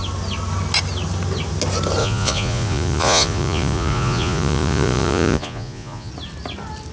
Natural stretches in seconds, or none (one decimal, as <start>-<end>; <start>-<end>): 0.0-2.0; 6.1-6.9